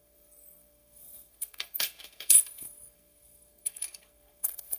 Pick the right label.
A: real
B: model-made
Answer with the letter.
B